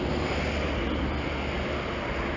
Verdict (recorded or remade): recorded